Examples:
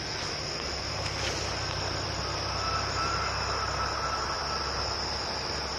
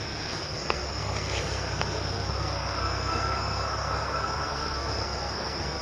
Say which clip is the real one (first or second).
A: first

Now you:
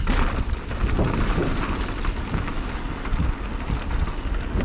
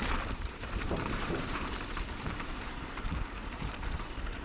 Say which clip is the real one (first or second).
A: first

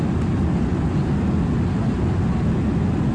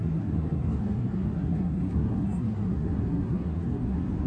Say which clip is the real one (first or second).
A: first